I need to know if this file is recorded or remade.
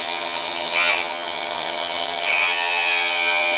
remade